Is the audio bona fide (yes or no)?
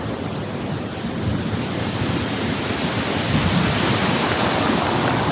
yes